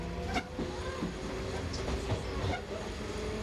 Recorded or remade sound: recorded